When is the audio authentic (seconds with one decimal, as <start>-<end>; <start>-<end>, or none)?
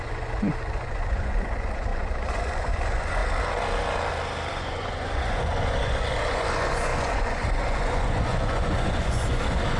3.2-4.5